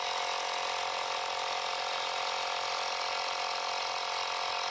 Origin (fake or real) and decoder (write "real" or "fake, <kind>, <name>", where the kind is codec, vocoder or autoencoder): real